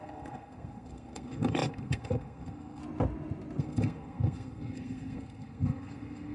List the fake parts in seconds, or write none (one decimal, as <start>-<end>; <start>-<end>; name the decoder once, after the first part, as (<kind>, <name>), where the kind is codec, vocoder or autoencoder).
0.0-2.8 (codec, SNAC); 3.6-6.3